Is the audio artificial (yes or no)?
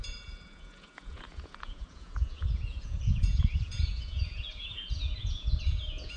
yes